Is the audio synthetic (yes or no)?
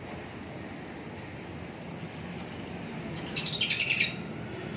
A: no